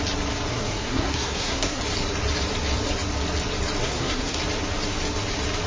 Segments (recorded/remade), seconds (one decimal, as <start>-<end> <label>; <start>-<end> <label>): 0.0-0.5 recorded; 0.5-1.8 remade; 1.8-3.8 recorded; 3.8-4.4 remade; 4.4-5.7 recorded